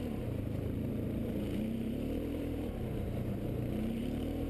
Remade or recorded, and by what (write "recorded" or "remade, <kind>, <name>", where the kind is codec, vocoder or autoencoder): remade, vocoder, BigVGAN v2